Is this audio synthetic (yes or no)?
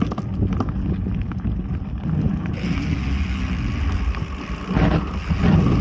no